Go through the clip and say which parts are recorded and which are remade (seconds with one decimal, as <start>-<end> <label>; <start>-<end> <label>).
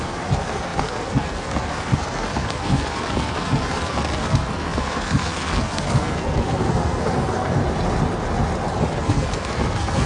0.0-7.6 remade; 7.6-9.0 recorded; 9.0-10.1 remade